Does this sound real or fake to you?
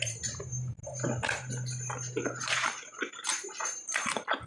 real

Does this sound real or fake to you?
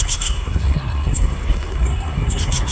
fake